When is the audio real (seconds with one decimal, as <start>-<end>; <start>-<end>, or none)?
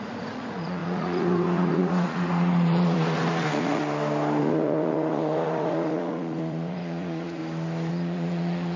3.8-4.4; 7.4-7.9